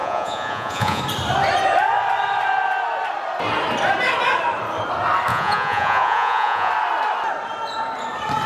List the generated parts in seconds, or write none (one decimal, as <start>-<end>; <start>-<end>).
0.0-1.0; 5.3-6.7